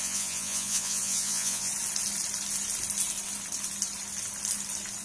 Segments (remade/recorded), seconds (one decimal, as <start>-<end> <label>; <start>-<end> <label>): 0.0-1.7 remade; 1.7-5.0 recorded